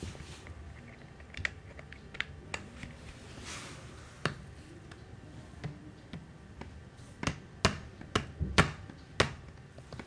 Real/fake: real